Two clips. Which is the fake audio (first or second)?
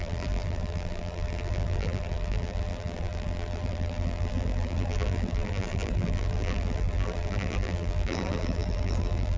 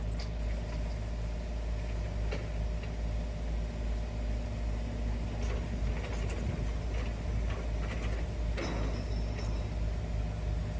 first